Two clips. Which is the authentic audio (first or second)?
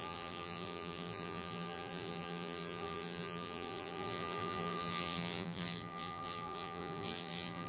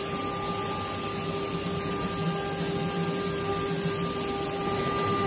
second